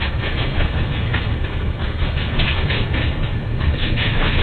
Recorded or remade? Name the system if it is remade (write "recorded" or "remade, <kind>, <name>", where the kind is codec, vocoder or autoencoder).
remade, codec, SNAC